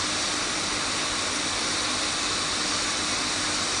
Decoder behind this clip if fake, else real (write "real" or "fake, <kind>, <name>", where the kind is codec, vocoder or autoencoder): real